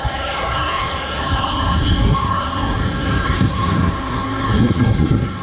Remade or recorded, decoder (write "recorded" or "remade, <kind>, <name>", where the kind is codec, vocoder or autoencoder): remade, codec, SNAC